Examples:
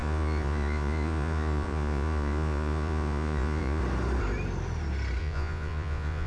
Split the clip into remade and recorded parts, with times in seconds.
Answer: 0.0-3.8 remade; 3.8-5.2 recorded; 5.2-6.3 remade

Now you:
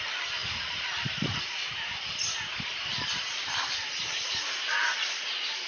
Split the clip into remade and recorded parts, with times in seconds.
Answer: 0.0-0.4 recorded; 0.4-3.7 remade; 3.7-5.7 recorded